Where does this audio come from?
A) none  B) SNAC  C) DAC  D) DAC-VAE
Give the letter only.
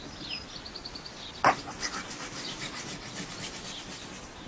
A